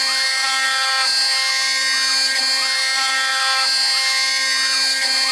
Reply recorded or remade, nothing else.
recorded